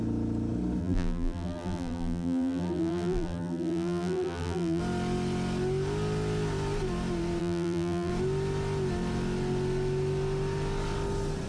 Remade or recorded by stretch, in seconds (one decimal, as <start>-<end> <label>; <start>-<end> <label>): 0.0-0.8 recorded; 0.8-4.8 remade; 4.8-7.4 recorded; 7.4-8.1 remade; 8.1-11.5 recorded